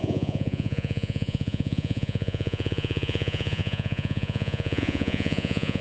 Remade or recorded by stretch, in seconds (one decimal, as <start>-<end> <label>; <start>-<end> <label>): 0.0-5.8 remade

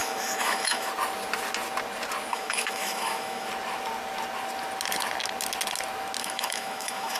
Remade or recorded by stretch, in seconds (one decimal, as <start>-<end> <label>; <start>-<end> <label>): 0.0-0.9 remade; 0.9-2.3 recorded; 2.3-3.5 remade; 3.5-6.2 recorded; 6.2-7.2 remade